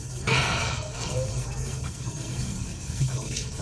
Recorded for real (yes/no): no